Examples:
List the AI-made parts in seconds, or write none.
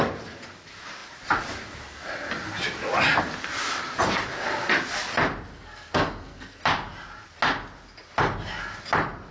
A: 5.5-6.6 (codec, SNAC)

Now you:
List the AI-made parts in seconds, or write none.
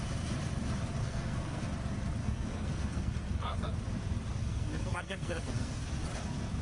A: 1.0-1.6 (codec, SNAC); 2.2-3.7; 4.4-5.8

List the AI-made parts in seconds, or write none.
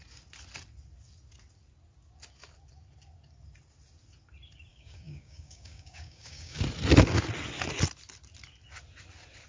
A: 4.7-6.6 (codec, DAC)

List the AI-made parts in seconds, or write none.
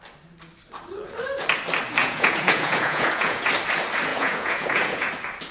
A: 2.0-3.5 (vocoder, Vocos); 4.1-5.1